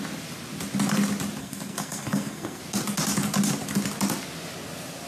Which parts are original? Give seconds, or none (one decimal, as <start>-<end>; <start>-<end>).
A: 0.0-1.4; 2.6-5.1